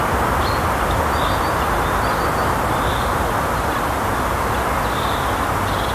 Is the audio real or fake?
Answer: real